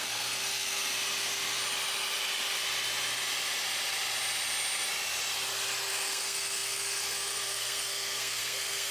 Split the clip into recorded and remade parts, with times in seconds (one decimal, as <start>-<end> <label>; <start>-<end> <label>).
0.0-0.8 remade; 0.8-5.9 recorded; 5.9-8.9 remade